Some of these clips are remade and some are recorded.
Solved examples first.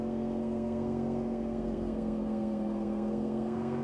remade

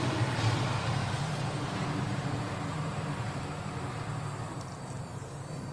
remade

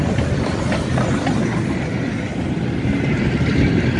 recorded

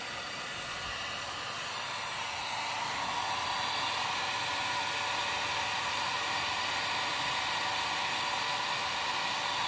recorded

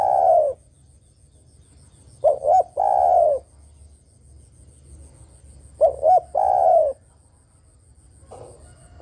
recorded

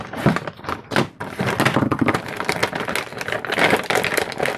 recorded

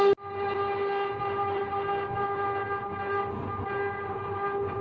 recorded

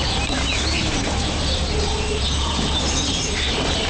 remade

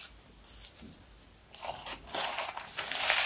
recorded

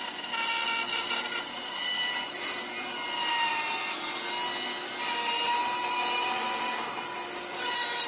recorded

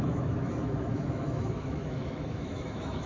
remade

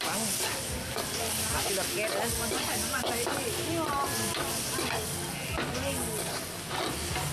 recorded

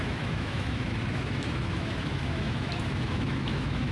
remade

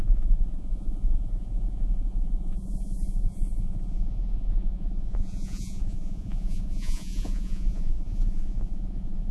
remade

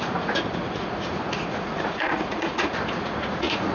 remade